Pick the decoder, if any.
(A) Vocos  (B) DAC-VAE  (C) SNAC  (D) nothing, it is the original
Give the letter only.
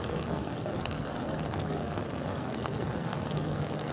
C